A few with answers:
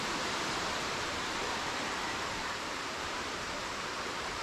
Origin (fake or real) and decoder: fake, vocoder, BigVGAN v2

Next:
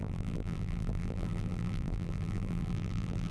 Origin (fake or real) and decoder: fake, vocoder, BigVGAN v2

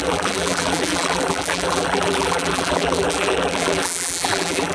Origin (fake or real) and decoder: fake, vocoder, BigVGAN v2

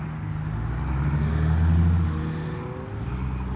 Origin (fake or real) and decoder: real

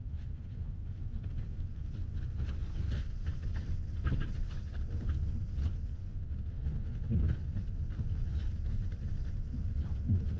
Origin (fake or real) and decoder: fake, vocoder, BigVGAN v2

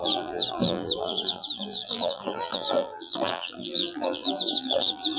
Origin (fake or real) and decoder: fake, vocoder, BigVGAN v2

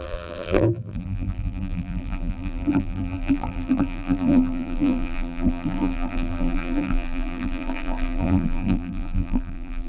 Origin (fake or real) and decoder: fake, vocoder, BigVGAN v2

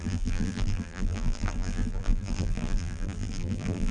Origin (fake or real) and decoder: fake, vocoder, BigVGAN v2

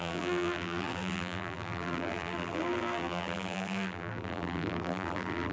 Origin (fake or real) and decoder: fake, vocoder, BigVGAN v2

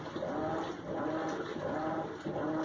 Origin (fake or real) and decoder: real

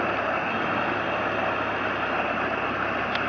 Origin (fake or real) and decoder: real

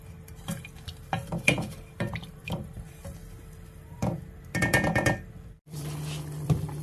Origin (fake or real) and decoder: fake, vocoder, BigVGAN v2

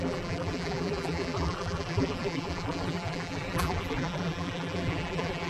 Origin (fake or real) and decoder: fake, vocoder, BigVGAN v2